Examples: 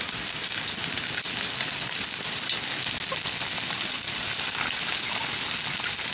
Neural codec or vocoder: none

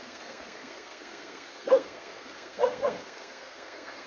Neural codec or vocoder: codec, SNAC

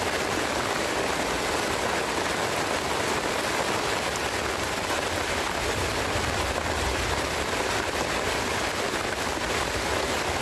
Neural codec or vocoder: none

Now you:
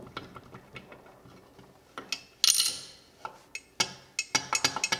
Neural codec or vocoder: none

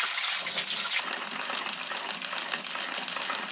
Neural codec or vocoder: none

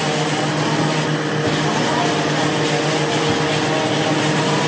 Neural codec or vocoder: none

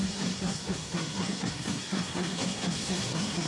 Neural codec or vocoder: codec, SNAC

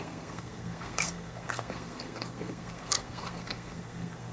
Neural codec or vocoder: codec, SNAC